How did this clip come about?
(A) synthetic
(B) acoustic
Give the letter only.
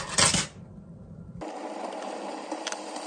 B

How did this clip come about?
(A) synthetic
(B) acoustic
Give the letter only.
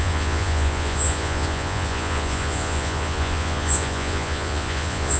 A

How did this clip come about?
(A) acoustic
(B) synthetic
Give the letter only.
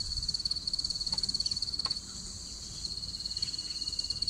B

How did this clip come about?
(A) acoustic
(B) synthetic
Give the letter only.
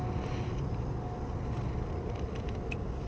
A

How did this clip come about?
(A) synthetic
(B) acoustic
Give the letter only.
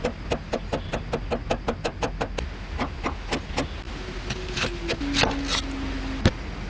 B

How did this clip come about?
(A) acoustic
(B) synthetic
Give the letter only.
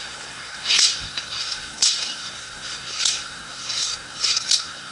B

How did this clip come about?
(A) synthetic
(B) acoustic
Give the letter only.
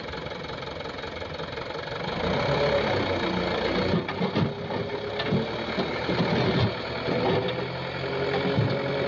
B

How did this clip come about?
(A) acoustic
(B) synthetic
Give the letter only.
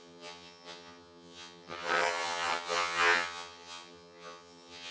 B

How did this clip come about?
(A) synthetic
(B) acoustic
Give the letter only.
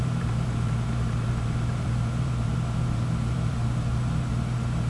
A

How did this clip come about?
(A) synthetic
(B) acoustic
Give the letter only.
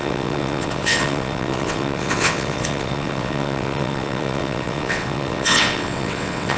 A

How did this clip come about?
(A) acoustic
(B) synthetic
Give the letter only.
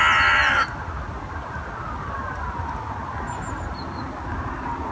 A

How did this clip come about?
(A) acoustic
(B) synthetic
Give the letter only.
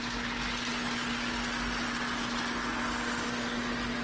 A